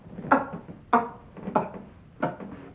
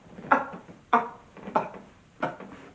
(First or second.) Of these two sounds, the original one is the first